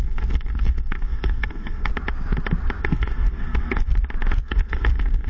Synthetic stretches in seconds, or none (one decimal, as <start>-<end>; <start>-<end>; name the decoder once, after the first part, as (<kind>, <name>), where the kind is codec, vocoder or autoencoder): 0.0-1.9 (codec, SNAC); 2.8-3.9; 4.4-5.3